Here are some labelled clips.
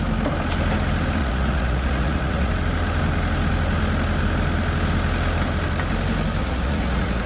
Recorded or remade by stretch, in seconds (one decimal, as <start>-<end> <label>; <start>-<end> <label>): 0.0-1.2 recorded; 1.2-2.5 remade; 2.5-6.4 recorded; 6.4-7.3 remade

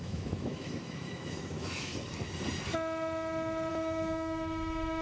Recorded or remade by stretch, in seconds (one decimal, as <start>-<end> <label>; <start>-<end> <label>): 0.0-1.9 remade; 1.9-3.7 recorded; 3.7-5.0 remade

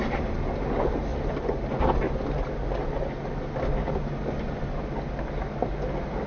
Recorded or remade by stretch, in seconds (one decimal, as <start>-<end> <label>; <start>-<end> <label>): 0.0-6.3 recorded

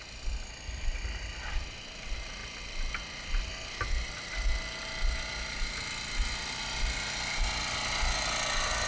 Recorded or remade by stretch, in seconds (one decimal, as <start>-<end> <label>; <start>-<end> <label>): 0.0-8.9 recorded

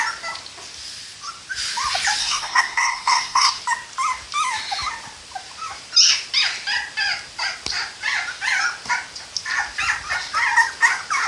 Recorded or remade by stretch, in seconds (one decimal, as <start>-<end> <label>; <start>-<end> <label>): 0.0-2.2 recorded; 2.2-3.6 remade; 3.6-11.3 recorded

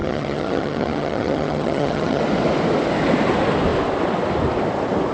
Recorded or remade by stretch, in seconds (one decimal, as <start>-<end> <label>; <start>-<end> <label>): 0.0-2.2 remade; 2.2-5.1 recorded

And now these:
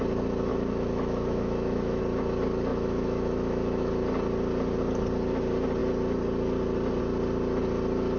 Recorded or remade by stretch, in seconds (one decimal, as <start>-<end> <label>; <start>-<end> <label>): 0.0-0.5 recorded; 0.5-2.0 remade; 2.0-2.7 recorded; 2.7-3.9 remade; 3.9-8.2 recorded

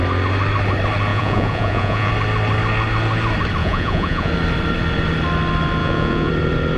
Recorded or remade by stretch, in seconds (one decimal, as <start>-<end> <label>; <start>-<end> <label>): 0.0-1.1 recorded; 1.1-2.1 remade; 2.1-3.6 recorded; 3.6-4.3 remade; 4.3-5.8 recorded; 5.8-6.3 remade; 6.3-6.8 recorded